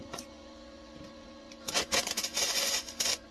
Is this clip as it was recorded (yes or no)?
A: no